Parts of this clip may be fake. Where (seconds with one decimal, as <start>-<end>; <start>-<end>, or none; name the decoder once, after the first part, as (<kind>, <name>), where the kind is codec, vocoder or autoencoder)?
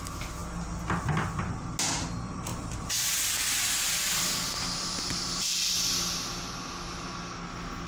2.5-5.9 (vocoder, BigVGAN v2)